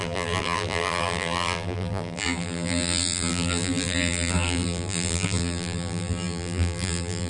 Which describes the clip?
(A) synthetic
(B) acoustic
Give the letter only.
A